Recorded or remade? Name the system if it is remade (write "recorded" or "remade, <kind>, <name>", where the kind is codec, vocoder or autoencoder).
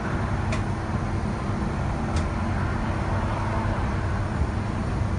recorded